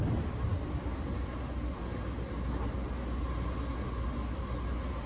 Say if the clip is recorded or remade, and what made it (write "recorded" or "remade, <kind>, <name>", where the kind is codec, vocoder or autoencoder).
recorded